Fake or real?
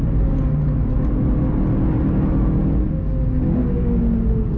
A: real